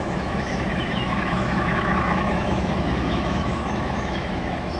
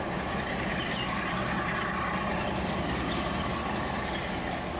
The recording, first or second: second